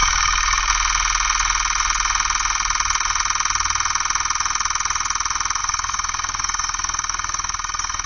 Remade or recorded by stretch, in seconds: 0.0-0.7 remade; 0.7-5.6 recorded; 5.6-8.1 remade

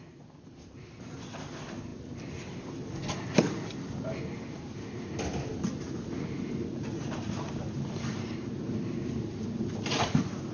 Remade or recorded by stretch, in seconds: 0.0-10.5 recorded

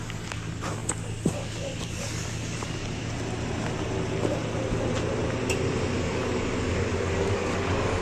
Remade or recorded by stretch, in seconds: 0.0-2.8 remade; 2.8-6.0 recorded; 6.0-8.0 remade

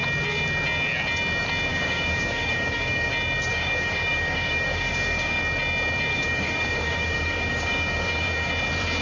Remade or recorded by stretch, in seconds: 0.0-1.7 recorded; 1.7-3.1 remade; 3.1-3.5 recorded; 3.5-5.4 remade; 5.4-6.1 recorded; 6.1-8.5 remade; 8.5-9.0 recorded

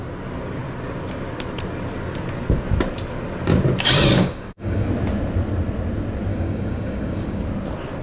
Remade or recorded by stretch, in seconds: 0.0-4.2 recorded; 4.2-4.9 remade; 4.9-6.3 recorded; 6.3-7.4 remade; 7.4-8.0 recorded

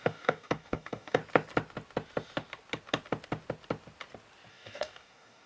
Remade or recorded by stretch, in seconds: 0.0-1.2 remade; 1.2-4.5 recorded; 4.5-5.5 remade